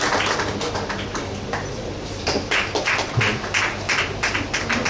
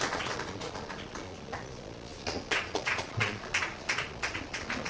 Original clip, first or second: first